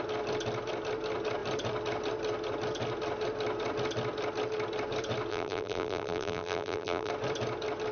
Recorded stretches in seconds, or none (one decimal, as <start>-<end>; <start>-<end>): 0.0-5.3; 7.1-7.9